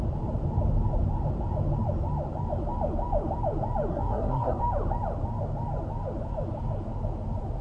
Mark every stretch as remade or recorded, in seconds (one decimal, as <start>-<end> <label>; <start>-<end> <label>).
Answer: 0.0-3.9 recorded; 3.9-4.6 remade; 4.6-7.6 recorded